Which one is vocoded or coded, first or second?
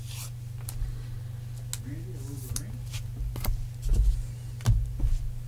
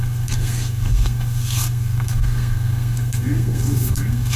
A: second